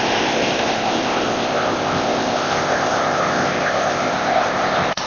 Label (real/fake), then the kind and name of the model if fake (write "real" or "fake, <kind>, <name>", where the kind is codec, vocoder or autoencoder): fake, codec, ZipCodec